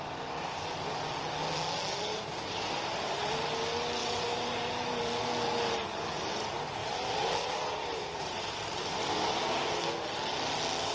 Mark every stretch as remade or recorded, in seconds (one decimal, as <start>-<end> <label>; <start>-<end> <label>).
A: 0.0-2.1 recorded; 2.1-3.5 remade; 3.5-4.0 recorded; 4.0-5.0 remade; 5.0-6.8 recorded; 6.8-9.0 remade; 9.0-10.9 recorded